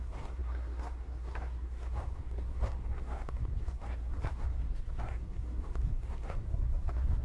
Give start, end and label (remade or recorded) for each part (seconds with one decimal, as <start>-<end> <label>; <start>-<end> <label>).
0.0-7.2 remade